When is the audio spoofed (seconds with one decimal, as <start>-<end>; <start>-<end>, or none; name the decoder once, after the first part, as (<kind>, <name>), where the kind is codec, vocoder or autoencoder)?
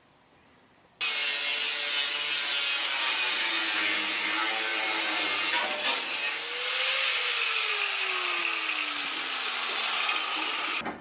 none